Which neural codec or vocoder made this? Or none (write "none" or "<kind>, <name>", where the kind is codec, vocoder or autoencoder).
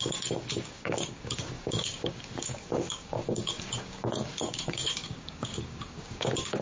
codec, DAC